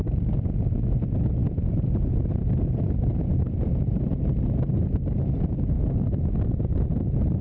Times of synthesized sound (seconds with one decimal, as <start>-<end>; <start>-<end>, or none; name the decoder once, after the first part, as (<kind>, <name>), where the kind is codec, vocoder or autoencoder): none